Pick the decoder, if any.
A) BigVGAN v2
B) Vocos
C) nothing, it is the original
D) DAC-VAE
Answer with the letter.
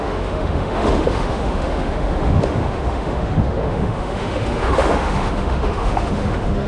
D